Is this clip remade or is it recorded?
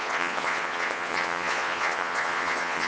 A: remade